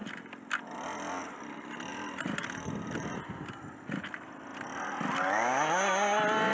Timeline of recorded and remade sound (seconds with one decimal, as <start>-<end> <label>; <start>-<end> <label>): 0.0-1.9 recorded; 1.9-3.2 remade; 3.2-6.5 recorded